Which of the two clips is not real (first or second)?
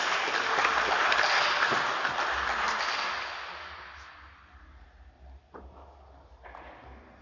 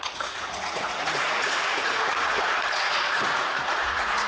second